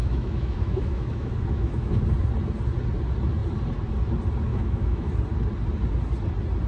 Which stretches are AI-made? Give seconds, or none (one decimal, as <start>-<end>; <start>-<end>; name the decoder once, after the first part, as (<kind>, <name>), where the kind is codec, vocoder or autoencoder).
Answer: 0.0-2.0 (autoencoder, DAC-VAE); 4.5-5.1